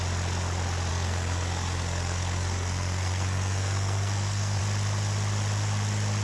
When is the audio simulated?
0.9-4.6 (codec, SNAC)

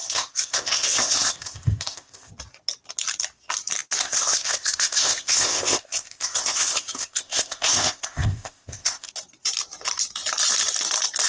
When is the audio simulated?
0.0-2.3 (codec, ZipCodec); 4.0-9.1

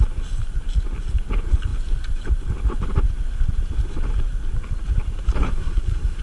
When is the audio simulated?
5.4-6.2 (codec, SNAC)

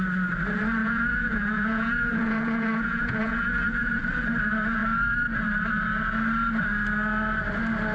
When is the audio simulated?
0.8-4.0 (vocoder, Vocos)

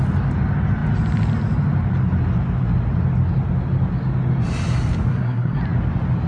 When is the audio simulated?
5.1-5.6 (codec, SNAC)

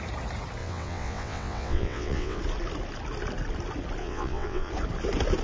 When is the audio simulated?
0.6-2.4 (vocoder, WaveNeXt); 4.0-4.7